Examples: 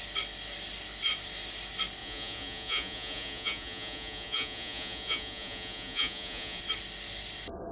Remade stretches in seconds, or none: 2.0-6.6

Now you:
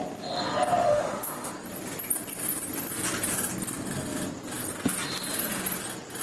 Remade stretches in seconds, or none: 0.8-1.5

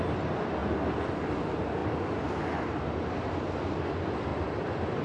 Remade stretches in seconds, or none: 1.8-2.7; 4.3-5.0

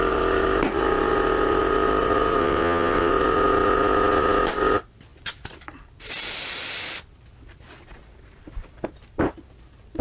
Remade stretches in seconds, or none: 2.4-3.1

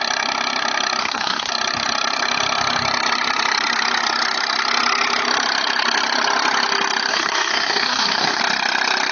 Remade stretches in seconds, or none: 1.0-1.5; 7.1-8.4